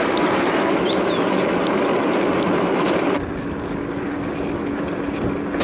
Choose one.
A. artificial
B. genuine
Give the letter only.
B